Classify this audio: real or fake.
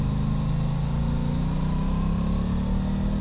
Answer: real